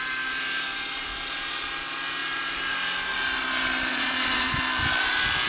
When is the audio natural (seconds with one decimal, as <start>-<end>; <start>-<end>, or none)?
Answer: 0.0-3.9; 4.6-5.5